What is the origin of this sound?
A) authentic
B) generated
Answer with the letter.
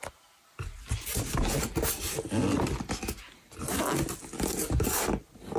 A